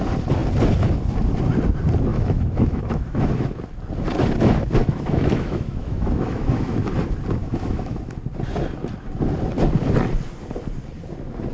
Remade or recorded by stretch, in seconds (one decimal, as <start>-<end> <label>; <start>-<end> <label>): 0.0-2.1 recorded; 2.1-3.6 remade; 3.6-4.8 recorded; 4.8-6.8 remade; 6.8-7.4 recorded; 7.4-8.0 remade; 8.0-11.5 recorded